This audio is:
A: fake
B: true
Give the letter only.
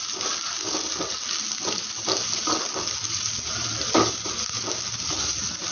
B